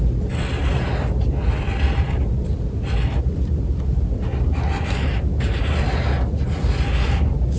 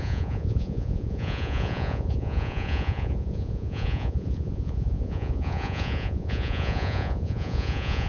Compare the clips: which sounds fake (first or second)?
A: second